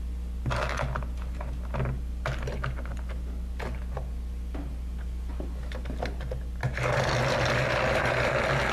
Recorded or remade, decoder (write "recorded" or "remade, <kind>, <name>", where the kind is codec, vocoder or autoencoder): recorded